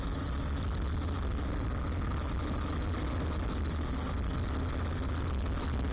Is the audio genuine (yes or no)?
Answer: yes